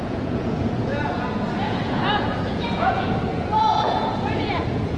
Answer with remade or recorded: remade